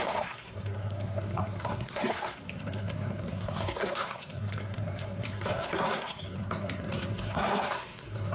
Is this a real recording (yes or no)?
no